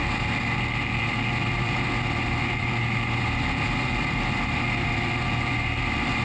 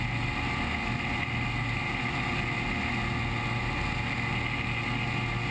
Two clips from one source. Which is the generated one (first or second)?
first